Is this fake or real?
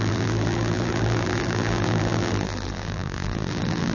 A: fake